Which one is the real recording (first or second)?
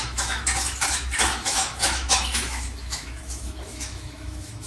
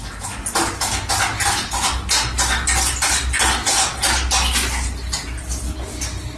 second